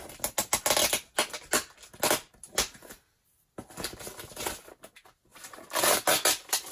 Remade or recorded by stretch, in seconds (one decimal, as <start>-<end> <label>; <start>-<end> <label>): 0.0-6.7 recorded